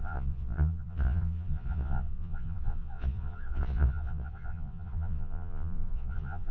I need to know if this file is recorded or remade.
remade